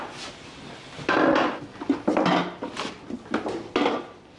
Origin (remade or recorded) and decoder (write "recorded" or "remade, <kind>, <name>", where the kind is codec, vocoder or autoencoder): recorded